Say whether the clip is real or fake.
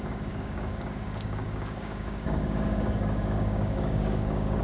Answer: fake